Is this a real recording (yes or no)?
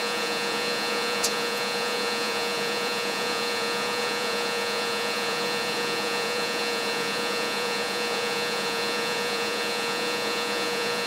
no